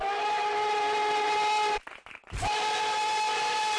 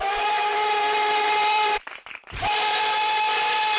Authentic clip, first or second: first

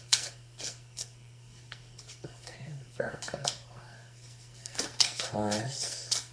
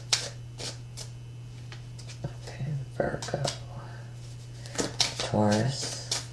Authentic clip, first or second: second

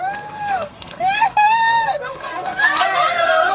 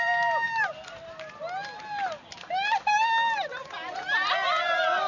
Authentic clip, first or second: second